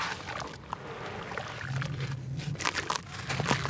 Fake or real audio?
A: real